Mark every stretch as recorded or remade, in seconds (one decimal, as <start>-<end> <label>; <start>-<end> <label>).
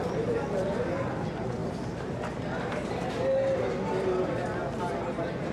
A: 0.0-5.5 recorded